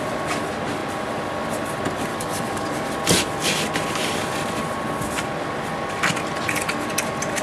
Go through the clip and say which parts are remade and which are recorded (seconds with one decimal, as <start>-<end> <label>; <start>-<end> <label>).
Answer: 0.0-2.1 recorded; 2.1-2.9 remade; 2.9-7.4 recorded